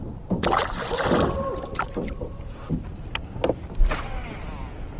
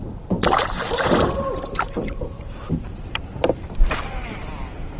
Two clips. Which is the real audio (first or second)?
first